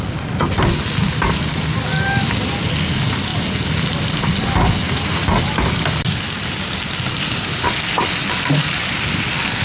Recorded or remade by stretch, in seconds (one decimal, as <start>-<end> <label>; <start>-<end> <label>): 0.0-4.8 recorded; 4.8-5.3 remade; 5.3-9.6 recorded